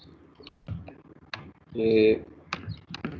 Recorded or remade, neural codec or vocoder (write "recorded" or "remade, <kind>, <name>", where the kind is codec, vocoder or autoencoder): recorded